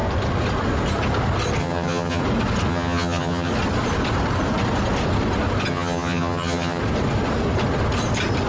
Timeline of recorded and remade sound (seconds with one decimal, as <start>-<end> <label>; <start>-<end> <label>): 0.0-1.6 recorded; 1.6-2.2 remade; 2.2-2.7 recorded; 2.7-3.5 remade; 3.5-5.7 recorded; 5.7-6.8 remade; 6.8-8.5 recorded